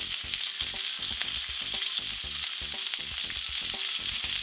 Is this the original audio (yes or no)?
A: yes